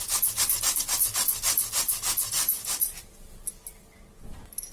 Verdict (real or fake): real